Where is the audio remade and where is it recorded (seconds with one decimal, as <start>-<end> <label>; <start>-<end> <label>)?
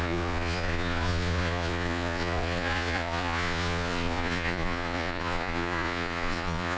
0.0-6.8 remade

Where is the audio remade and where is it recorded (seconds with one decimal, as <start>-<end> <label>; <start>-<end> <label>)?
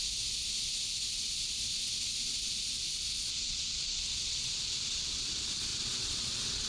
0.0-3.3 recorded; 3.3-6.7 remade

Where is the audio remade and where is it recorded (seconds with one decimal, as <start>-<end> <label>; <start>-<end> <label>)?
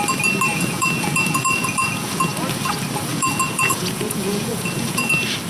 0.0-0.5 recorded; 0.5-2.2 remade; 2.2-3.1 recorded; 3.1-5.1 remade; 5.1-5.5 recorded